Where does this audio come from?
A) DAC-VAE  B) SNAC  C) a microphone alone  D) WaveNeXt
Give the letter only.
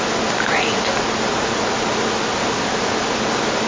C